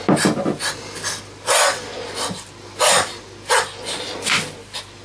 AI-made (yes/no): no